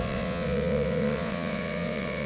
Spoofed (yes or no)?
yes